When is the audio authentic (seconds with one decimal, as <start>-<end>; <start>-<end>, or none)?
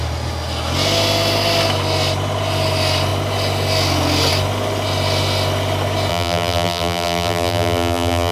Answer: 0.0-6.1